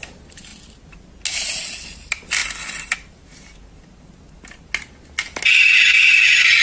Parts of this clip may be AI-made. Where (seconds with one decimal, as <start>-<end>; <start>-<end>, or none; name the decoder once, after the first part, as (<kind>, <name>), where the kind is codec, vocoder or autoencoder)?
none